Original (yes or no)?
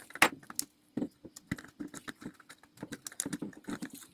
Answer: yes